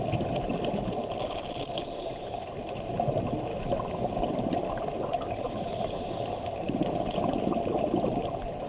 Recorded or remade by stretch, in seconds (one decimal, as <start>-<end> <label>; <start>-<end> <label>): 0.0-3.5 recorded; 3.5-4.1 remade; 4.1-8.7 recorded